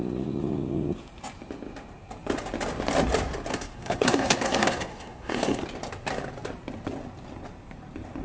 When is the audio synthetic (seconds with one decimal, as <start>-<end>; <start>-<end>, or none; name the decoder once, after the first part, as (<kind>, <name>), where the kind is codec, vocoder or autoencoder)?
3.5-5.6 (codec, SNAC)